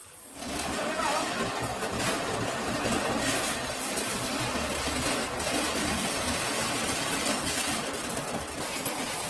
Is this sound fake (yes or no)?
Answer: no